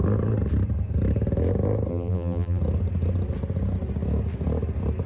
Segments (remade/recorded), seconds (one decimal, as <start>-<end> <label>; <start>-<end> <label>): 0.0-1.9 recorded; 1.9-2.6 remade; 2.6-5.1 recorded